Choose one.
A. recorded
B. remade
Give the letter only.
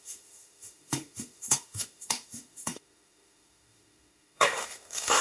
B